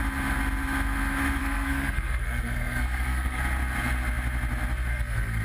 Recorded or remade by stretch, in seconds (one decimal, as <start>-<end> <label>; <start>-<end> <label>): 0.0-1.4 recorded; 1.4-3.4 remade; 3.4-4.9 recorded; 4.9-5.4 remade